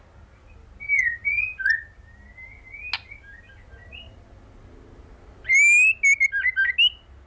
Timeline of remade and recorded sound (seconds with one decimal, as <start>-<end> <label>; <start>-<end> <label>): 0.0-7.3 recorded